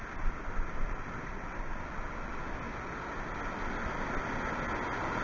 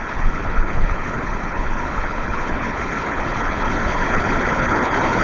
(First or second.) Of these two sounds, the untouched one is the first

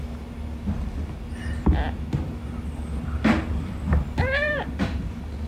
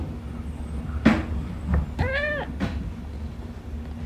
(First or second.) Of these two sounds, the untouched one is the second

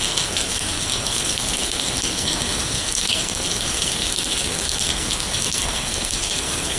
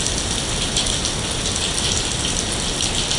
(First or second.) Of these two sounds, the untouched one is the second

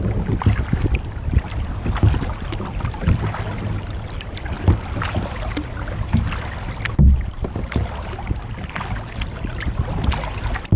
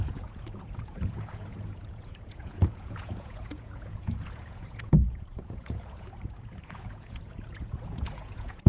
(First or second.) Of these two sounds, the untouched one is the first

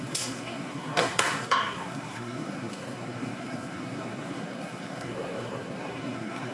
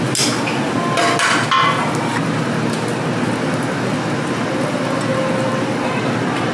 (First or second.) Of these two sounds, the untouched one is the second